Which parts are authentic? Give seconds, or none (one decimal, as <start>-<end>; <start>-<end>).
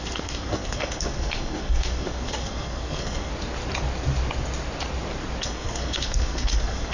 3.3-5.4